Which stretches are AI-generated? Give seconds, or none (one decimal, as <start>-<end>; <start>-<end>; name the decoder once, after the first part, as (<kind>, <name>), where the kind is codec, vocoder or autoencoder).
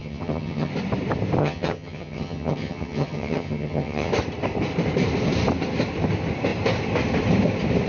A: 0.0-0.7 (vocoder, HiFi-GAN); 1.4-4.1